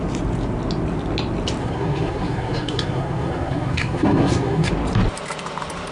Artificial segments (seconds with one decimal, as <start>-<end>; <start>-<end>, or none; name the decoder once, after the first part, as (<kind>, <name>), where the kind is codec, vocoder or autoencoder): 1.6-4.7 (codec, SNAC)